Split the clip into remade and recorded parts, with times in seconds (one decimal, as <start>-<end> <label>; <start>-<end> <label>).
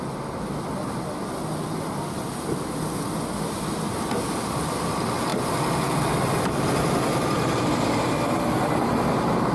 0.0-9.5 recorded